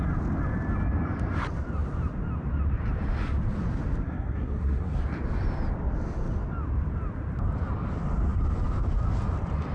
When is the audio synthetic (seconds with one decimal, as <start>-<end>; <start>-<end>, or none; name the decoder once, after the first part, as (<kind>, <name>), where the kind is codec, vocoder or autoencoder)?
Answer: 4.0-5.0 (codec, SNAC)